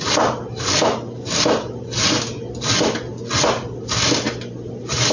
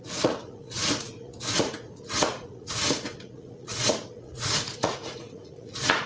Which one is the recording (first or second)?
first